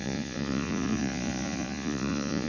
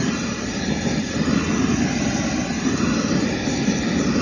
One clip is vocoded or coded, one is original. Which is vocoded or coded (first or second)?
first